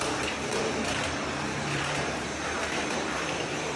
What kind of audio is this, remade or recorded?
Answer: remade